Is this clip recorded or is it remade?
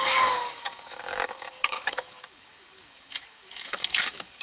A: remade